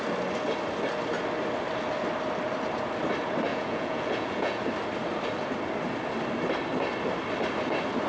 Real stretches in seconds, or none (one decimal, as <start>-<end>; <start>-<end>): 0.0-3.5; 4.6-8.1